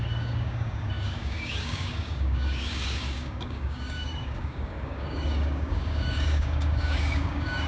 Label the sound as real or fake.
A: fake